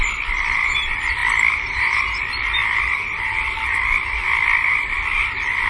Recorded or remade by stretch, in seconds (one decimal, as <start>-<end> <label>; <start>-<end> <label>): 0.0-5.7 recorded